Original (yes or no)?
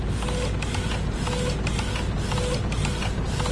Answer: yes